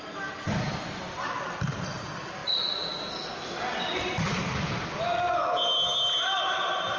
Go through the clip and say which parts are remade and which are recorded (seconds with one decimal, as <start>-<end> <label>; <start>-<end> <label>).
0.0-7.0 recorded